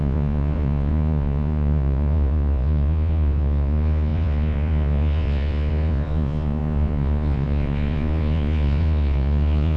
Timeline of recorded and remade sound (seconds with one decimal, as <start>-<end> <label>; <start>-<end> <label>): 0.0-9.8 remade